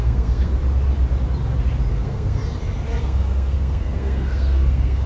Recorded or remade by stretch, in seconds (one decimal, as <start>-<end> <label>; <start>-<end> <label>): 0.0-0.5 remade; 0.5-1.9 recorded; 1.9-2.4 remade; 2.4-3.0 recorded; 3.0-5.1 remade